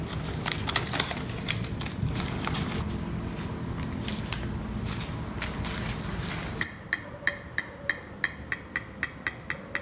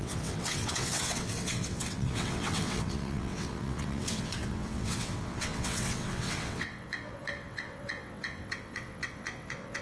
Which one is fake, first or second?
second